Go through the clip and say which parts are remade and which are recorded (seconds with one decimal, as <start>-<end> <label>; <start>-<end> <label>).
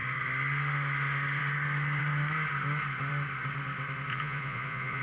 0.0-4.1 recorded; 4.1-5.0 remade